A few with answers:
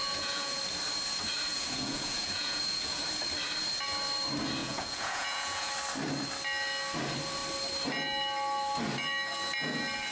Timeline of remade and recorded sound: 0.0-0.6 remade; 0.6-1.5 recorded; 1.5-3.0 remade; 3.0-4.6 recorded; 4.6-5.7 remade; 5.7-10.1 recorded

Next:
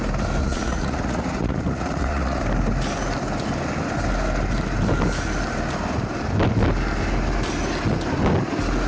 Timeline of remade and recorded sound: 0.0-0.4 recorded; 0.4-2.4 remade; 2.4-8.9 recorded

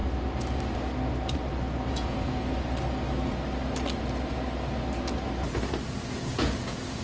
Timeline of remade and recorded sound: 0.0-1.9 recorded; 1.9-2.5 remade; 2.5-6.3 recorded; 6.3-7.0 remade